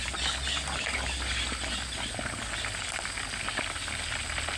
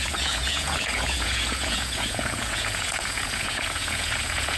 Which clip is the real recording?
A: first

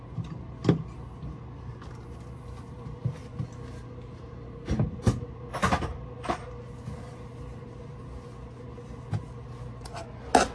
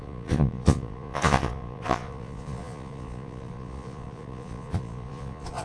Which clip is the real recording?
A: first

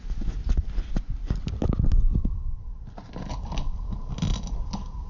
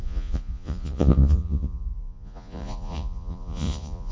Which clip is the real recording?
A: first